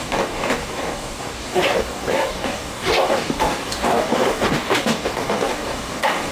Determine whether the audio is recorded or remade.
remade